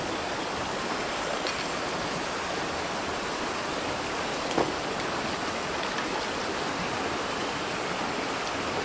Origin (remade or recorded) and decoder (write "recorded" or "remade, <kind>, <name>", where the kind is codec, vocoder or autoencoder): recorded